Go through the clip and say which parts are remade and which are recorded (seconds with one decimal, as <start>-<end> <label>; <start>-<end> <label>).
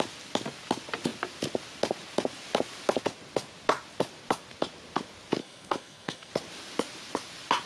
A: 0.0-5.4 recorded; 5.4-6.3 remade; 6.3-7.7 recorded